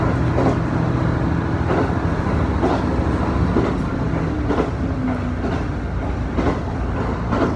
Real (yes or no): yes